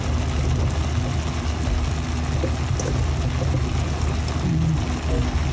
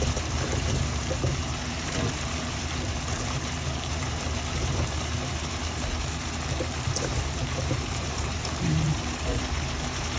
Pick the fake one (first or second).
second